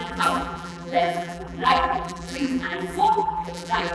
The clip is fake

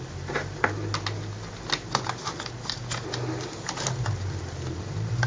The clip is real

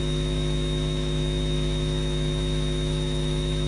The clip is fake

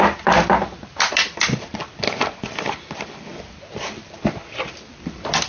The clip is fake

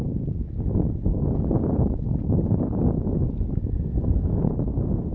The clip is real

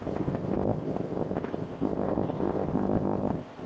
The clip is fake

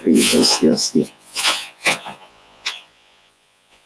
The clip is fake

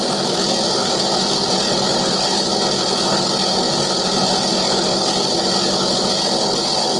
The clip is real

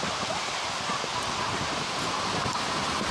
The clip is real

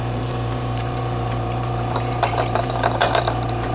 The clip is fake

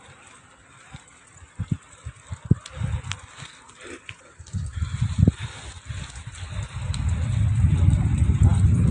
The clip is real